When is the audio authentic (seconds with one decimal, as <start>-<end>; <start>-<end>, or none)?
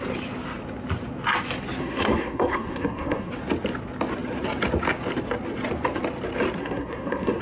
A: 0.0-1.8; 3.3-6.6